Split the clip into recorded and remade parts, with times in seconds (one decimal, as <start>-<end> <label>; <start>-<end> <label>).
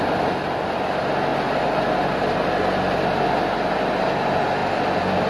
0.0-5.3 recorded